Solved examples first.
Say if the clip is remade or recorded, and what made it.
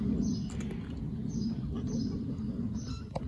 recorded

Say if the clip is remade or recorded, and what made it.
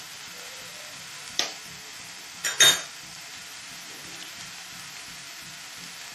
recorded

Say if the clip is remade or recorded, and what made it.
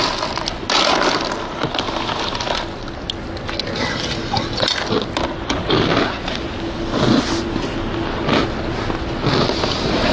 recorded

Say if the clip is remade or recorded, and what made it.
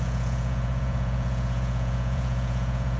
remade, vocoder, Vocos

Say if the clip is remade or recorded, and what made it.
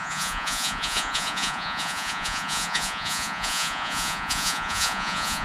remade, vocoder, Vocos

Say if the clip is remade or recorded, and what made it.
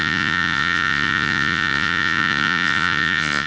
remade, vocoder, Vocos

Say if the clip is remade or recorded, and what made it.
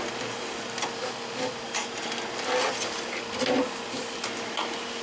recorded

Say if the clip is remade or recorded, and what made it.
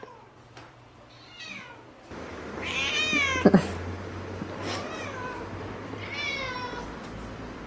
recorded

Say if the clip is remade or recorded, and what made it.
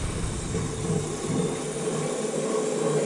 recorded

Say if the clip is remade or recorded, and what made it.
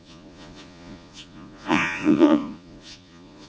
remade, vocoder, Vocos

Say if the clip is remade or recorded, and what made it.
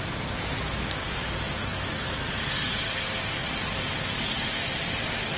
recorded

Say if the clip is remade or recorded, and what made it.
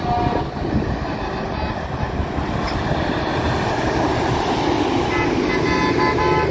recorded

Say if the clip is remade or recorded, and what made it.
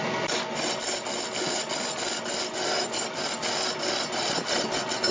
recorded